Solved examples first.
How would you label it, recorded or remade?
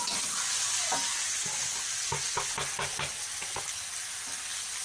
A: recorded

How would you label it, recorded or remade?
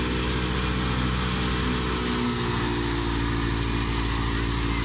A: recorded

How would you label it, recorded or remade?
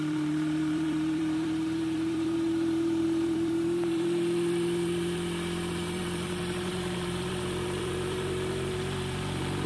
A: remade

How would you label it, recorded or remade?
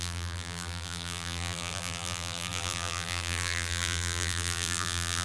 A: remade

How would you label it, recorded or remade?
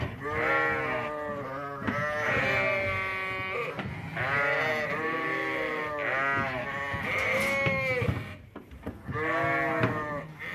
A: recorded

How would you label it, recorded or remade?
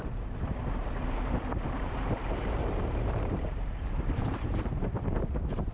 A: remade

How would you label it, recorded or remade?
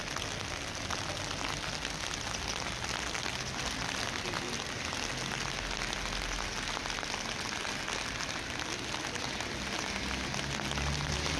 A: recorded